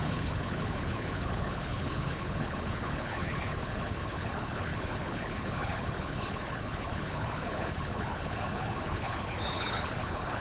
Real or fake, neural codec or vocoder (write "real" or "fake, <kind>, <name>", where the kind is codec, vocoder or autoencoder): fake, codec, HILCodec